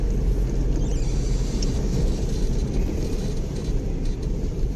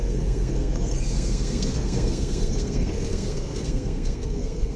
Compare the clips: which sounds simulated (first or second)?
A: second